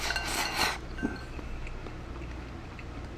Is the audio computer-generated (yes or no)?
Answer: no